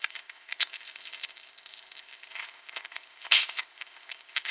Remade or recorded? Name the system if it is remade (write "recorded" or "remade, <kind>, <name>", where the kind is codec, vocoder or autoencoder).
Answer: remade, codec, ZipCodec